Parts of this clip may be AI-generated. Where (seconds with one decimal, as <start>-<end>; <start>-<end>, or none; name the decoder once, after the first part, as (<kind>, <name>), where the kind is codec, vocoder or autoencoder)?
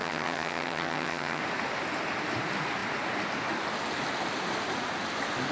0.0-1.4 (vocoder, HiFi-GAN)